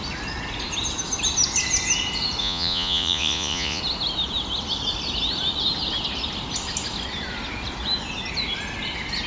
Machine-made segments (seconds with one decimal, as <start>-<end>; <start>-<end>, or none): 2.4-3.8